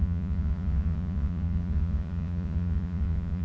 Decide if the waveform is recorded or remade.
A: remade